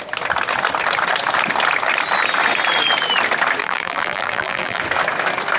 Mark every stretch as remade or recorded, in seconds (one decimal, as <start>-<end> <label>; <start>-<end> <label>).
0.0-3.6 recorded; 3.6-4.8 remade; 4.8-5.6 recorded

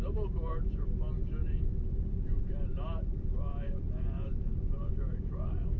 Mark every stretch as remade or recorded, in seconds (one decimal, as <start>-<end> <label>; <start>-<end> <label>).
0.0-1.4 recorded; 1.4-4.9 remade; 4.9-5.8 recorded